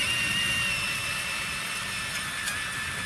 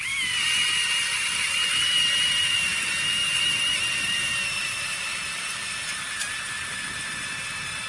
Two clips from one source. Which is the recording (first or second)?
first